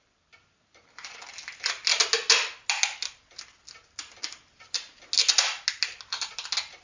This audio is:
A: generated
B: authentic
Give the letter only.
B